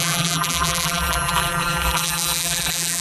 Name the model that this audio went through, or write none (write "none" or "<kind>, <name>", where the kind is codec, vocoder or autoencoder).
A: vocoder, BigVGAN v2